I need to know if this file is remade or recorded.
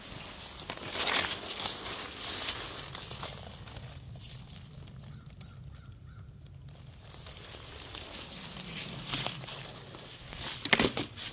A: recorded